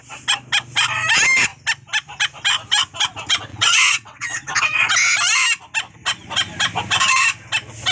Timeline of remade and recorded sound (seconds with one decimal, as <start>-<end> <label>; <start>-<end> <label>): 0.0-3.5 recorded; 3.5-4.9 remade; 4.9-7.9 recorded